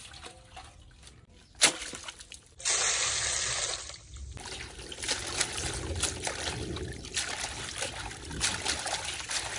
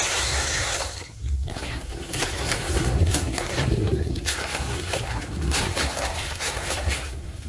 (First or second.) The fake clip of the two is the second